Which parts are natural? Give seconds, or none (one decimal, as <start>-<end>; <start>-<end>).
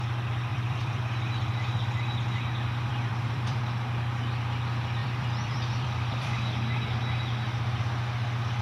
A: 0.0-0.5; 1.0-2.9; 3.6-5.0; 6.3-8.6